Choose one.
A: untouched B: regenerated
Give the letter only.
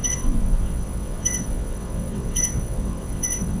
B